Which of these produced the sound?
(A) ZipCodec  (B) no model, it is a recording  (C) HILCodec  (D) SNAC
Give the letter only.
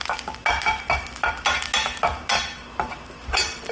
B